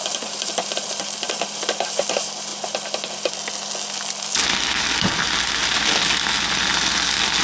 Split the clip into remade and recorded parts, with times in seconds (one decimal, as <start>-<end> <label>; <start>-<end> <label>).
0.0-7.4 recorded